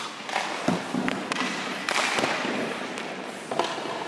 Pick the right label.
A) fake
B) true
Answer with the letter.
B